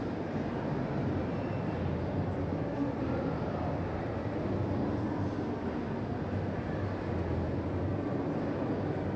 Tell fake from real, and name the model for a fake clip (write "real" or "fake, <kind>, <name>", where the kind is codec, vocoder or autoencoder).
real